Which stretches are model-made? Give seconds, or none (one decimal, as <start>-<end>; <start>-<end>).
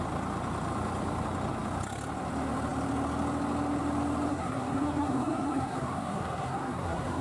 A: 4.3-7.2